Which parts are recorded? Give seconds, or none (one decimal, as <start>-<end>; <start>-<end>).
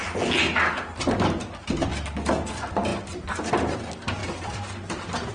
0.0-5.3